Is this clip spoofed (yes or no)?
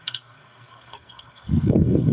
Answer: yes